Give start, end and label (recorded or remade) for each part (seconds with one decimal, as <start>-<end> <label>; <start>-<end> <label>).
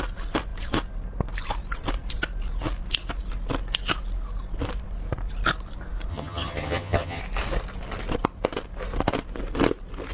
0.0-6.1 recorded; 6.1-7.2 remade; 7.2-10.1 recorded